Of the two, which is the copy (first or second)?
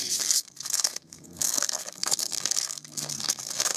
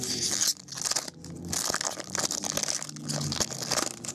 first